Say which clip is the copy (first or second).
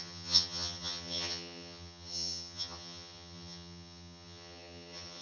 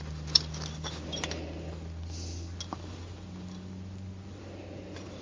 first